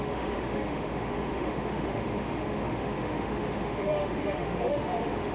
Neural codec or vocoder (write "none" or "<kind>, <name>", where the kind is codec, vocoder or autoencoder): autoencoder, DAC-VAE